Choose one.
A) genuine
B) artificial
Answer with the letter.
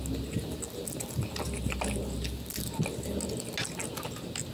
A